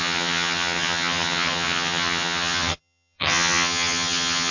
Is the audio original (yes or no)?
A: no